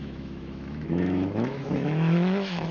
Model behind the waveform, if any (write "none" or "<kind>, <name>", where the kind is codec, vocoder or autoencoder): autoencoder, DAC-VAE